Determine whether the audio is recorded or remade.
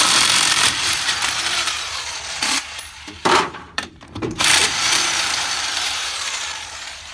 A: remade